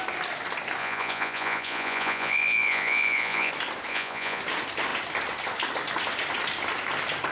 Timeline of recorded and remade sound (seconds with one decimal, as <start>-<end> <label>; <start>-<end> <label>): 0.0-0.8 recorded; 0.8-3.5 remade; 3.5-3.9 recorded; 3.9-4.4 remade; 4.4-7.3 recorded